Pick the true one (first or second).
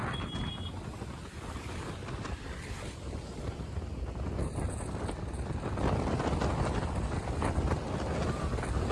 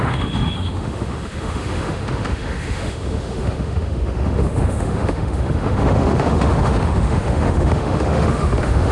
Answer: first